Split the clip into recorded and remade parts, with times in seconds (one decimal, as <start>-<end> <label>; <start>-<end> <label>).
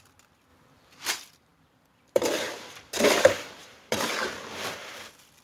0.0-0.5 recorded; 0.5-1.1 remade; 1.1-1.5 recorded; 1.5-4.7 remade; 4.7-5.4 recorded